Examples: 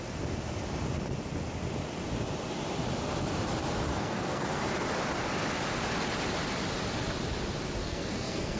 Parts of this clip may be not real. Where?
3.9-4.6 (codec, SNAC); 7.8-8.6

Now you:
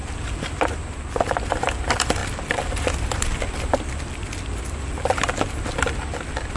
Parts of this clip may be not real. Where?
2.2-6.6 (vocoder, BigVGAN v2)

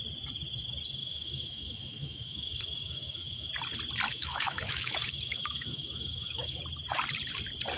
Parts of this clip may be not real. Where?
1.0-3.5 (autoencoder, DAC-VAE); 4.1-6.6

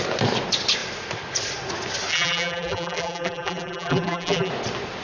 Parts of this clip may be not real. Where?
2.1-4.5 (vocoder, BigVGAN v2)

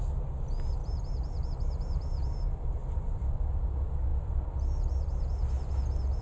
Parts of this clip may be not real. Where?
none

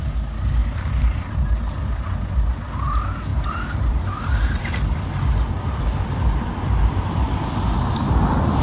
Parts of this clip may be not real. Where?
0.6-1.3 (vocoder, BigVGAN v2); 3.3-7.6

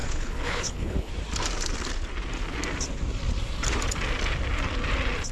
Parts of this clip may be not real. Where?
0.0-1.1 (codec, HILCodec)